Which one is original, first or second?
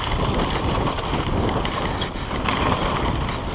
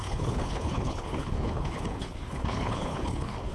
first